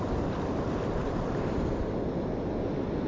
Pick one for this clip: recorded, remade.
recorded